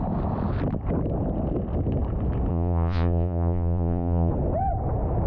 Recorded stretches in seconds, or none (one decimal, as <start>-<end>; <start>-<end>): 0.0-2.5; 4.3-5.3